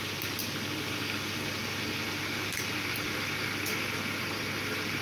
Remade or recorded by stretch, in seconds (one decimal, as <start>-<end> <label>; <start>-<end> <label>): 0.0-5.0 recorded